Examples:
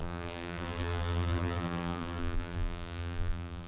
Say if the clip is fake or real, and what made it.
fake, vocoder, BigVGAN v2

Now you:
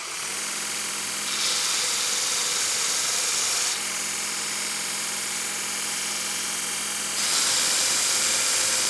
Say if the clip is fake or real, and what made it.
real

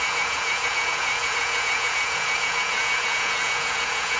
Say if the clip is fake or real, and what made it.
fake, vocoder, Vocos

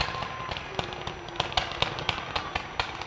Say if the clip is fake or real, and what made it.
real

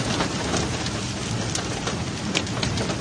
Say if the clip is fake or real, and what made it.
fake, vocoder, BigVGAN v2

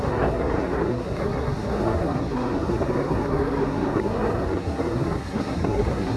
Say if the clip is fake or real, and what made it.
fake, codec, SNAC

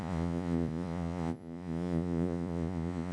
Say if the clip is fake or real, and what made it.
fake, vocoder, Vocos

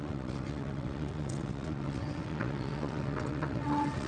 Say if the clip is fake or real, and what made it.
fake, vocoder, WaveNeXt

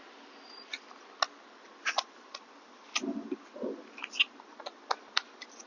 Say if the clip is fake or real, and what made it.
real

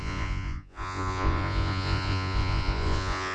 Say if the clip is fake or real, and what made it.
fake, vocoder, Vocos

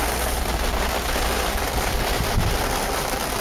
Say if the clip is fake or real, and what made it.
real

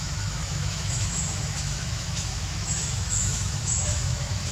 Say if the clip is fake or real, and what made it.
fake, autoencoder, DAC-VAE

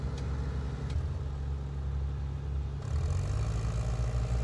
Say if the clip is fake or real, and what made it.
real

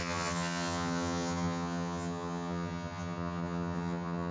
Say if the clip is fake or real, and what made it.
fake, vocoder, HiFi-GAN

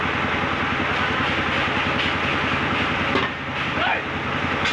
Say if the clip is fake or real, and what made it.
real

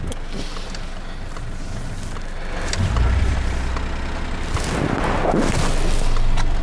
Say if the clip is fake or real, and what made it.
real